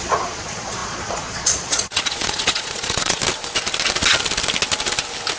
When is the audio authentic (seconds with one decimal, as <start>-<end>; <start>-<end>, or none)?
3.2-5.4